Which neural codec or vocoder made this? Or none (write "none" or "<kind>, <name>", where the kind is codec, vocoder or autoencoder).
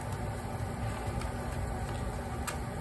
none